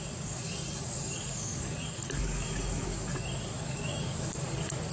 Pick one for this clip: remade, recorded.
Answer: remade